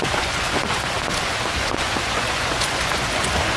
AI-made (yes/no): yes